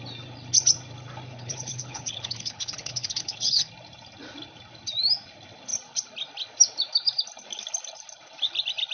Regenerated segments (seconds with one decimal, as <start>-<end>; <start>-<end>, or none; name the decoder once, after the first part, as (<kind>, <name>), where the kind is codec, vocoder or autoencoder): 1.3-3.7 (codec, HILCodec)